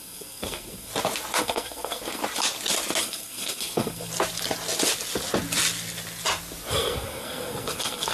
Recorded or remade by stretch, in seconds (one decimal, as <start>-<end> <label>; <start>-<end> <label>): 0.0-0.9 remade; 0.9-1.4 recorded; 1.4-2.2 remade; 2.2-3.0 recorded; 3.0-4.1 remade; 4.1-6.7 recorded; 6.7-8.1 remade